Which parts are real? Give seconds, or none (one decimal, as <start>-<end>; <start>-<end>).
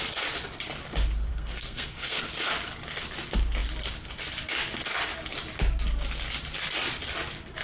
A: 0.0-1.3; 2.3-7.6